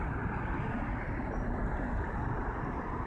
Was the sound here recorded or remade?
recorded